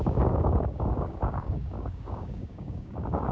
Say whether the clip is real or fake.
fake